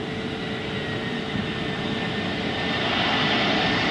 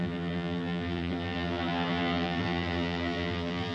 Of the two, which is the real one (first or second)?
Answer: first